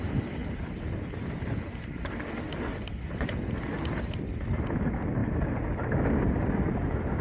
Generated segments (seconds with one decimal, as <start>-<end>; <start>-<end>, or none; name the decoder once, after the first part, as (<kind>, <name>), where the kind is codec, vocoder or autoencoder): none